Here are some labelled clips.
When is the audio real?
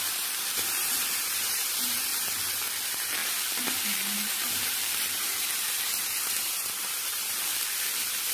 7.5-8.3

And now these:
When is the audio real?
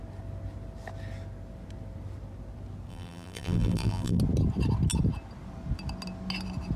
0.0-2.9; 4.2-6.8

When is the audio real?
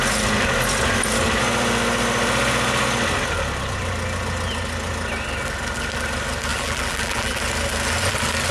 0.0-6.5; 7.4-8.5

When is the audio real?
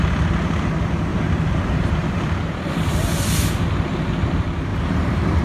0.0-1.1; 2.7-4.7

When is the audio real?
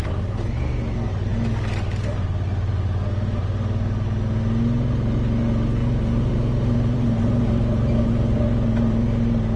0.0-5.8; 8.4-9.6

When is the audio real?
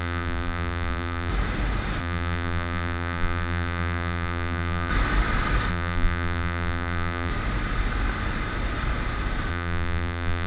1.3-2.0; 4.9-5.7; 7.3-9.5